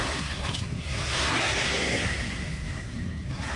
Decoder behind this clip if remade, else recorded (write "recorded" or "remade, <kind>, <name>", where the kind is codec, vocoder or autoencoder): remade, codec, SNAC